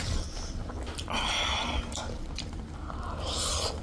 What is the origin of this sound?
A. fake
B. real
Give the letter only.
A